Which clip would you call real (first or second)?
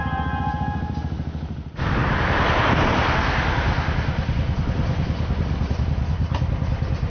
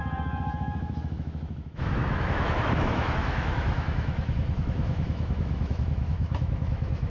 first